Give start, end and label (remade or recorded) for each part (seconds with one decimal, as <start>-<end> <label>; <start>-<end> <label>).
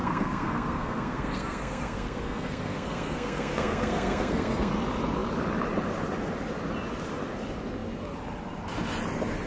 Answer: 0.0-4.7 remade; 4.7-9.5 recorded